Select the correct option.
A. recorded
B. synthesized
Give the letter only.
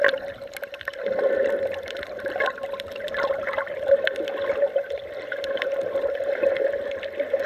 A